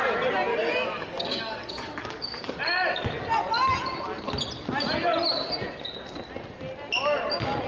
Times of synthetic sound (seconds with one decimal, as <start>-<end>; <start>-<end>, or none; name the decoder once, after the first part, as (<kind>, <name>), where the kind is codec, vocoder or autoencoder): 0.5-2.6 (codec, DAC)